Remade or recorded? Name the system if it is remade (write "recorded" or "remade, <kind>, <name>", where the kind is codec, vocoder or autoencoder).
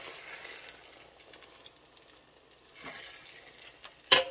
recorded